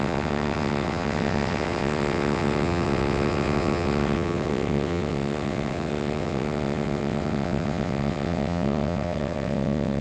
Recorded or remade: remade